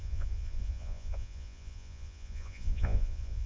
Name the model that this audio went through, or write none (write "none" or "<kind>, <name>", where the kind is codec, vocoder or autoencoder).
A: vocoder, Vocos